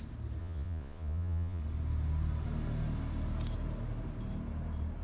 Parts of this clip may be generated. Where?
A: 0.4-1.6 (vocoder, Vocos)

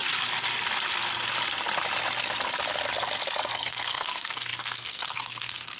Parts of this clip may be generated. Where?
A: 3.5-5.8 (codec, SNAC)